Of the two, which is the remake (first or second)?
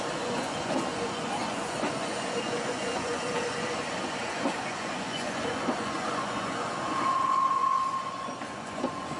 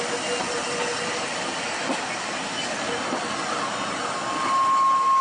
first